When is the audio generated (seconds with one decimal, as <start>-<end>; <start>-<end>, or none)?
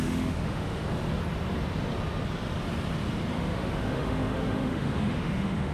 0.0-0.8; 3.4-5.7